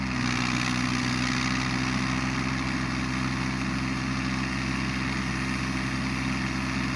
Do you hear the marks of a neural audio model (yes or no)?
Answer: no